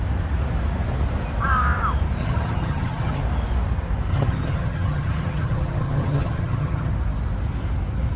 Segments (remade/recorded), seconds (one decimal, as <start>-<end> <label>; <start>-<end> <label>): 0.0-2.2 recorded; 2.2-3.2 remade; 3.2-4.1 recorded; 4.1-6.9 remade; 6.9-8.2 recorded